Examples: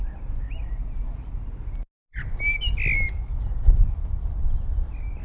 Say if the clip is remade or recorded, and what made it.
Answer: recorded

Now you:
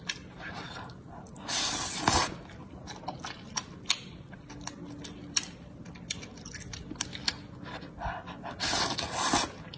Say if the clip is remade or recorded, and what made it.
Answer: recorded